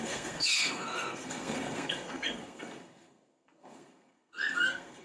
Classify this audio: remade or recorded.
remade